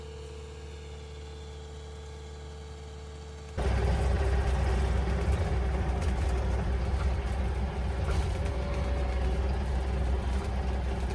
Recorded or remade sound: recorded